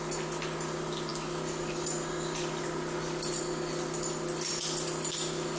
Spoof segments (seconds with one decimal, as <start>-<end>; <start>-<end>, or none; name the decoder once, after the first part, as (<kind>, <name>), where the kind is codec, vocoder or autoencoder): none